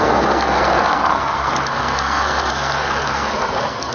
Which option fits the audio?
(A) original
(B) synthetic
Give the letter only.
B